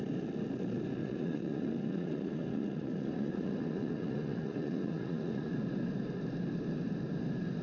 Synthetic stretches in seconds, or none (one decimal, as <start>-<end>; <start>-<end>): 1.0-5.5